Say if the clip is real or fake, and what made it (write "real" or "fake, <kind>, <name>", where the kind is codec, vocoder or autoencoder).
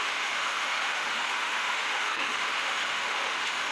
fake, autoencoder, DAC-VAE